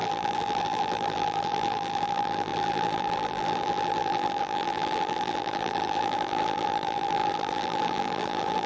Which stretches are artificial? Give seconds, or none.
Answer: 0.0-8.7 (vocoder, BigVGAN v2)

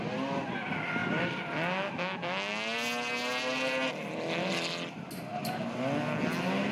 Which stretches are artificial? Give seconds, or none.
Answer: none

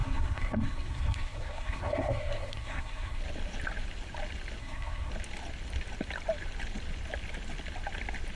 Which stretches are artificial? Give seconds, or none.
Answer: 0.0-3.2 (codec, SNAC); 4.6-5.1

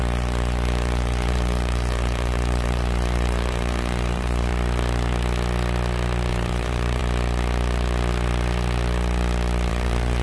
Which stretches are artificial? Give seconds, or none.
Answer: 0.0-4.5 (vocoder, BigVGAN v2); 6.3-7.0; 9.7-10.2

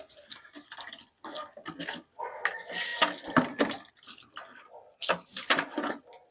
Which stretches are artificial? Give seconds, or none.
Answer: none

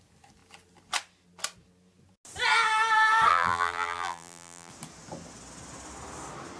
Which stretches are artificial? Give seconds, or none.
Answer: 3.3-4.7 (vocoder, BigVGAN v2)

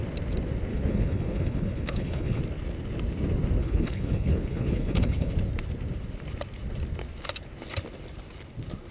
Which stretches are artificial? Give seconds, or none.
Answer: 0.7-2.4 (codec, HILCodec); 3.6-5.3

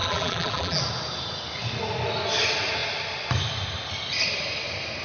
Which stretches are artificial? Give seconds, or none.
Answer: 0.0-0.8 (vocoder, BigVGAN v2)